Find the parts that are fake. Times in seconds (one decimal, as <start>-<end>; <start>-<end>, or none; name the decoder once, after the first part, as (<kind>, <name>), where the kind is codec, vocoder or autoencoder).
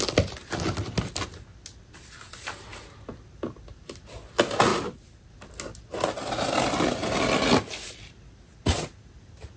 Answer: 4.7-5.3 (vocoder, BigVGAN v2)